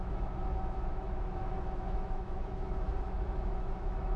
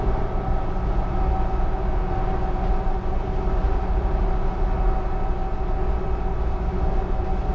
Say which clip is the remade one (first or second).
first